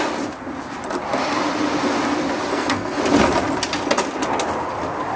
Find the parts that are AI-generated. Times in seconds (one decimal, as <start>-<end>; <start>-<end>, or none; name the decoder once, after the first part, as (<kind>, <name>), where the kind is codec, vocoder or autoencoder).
2.5-3.0 (codec, SNAC)